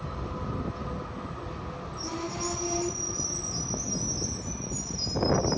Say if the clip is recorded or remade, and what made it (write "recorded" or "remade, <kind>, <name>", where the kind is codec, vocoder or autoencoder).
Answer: recorded